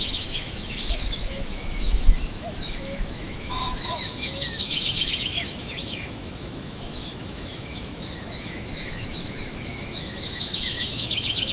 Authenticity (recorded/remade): remade